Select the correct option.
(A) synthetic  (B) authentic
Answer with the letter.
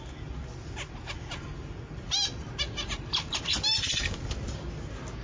B